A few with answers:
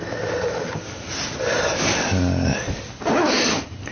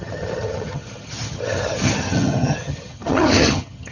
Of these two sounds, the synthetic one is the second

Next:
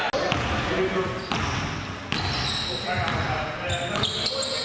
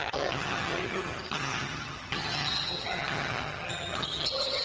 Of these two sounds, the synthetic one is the second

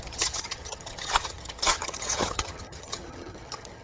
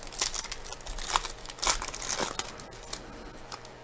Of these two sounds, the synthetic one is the first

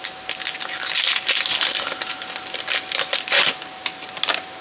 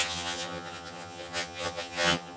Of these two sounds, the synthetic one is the second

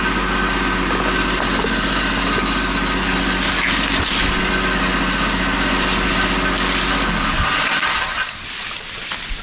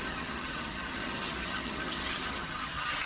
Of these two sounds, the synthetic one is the second